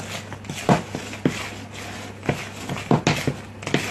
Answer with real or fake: real